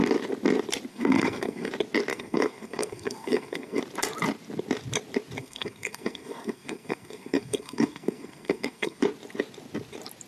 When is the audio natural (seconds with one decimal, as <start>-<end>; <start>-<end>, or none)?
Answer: 0.0-0.9; 1.7-2.1; 3.8-5.4; 9.0-10.3

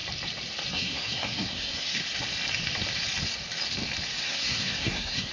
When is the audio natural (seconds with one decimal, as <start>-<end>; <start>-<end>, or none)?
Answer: 0.0-0.7; 2.0-4.2

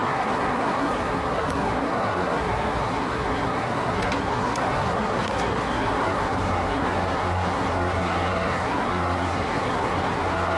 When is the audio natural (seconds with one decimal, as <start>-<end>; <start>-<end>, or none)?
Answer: none